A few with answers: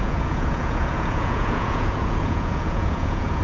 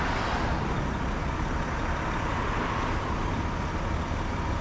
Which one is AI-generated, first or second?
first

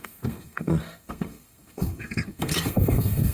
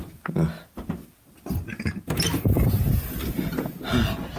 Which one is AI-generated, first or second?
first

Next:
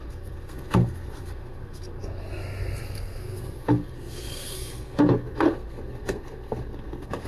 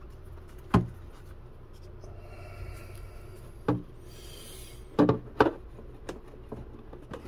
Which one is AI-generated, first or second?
first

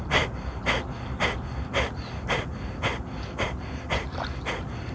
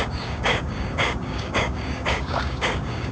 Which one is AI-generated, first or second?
second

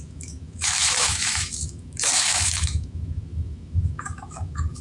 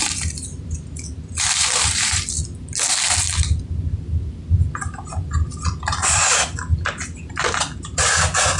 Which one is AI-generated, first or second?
first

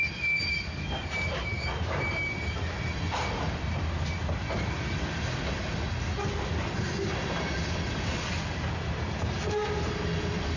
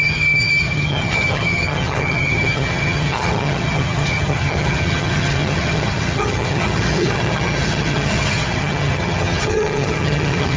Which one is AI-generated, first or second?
second